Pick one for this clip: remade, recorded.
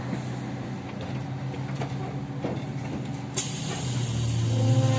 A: recorded